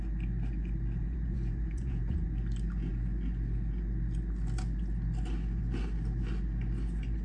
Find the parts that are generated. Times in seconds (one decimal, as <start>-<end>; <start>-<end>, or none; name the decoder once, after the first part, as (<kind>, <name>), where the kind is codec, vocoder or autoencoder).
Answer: 1.0-2.0 (vocoder, Vocos)